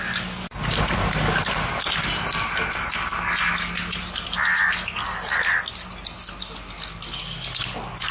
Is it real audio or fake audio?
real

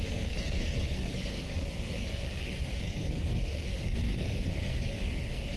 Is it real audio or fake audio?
fake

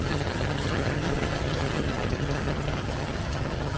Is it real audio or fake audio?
fake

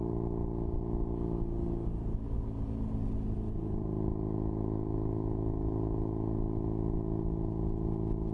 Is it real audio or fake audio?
real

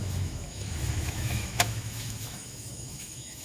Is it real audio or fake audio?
fake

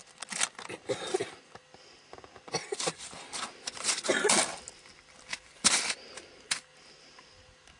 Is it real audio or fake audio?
real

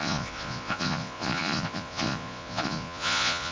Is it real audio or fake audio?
fake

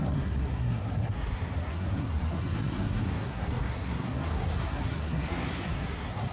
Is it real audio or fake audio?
fake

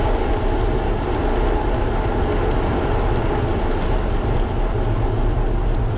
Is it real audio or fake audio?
real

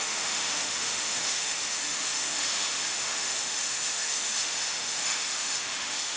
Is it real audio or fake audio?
fake